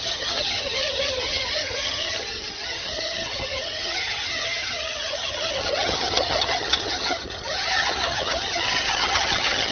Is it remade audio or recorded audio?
remade